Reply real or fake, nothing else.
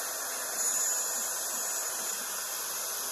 real